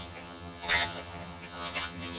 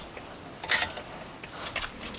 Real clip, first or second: second